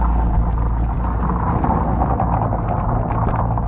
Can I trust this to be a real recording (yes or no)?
yes